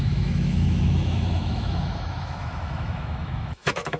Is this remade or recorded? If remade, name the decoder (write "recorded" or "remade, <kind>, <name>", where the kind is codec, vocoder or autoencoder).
remade, autoencoder, DAC-VAE